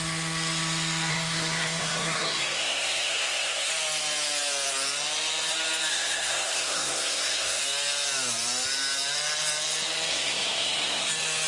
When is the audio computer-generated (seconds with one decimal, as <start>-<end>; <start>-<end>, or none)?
1.1-3.7; 5.9-7.6; 10.1-11.1